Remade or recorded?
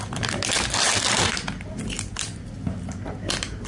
recorded